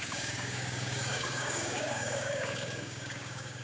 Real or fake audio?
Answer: fake